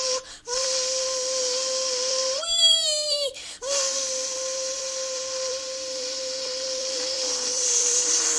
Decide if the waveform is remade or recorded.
remade